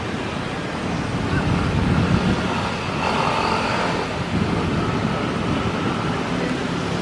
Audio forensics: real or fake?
real